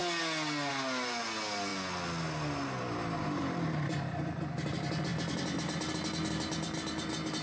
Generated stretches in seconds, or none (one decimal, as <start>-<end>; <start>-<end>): none